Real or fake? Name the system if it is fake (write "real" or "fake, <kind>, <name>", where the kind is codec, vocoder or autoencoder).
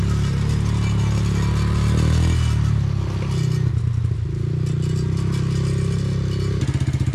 real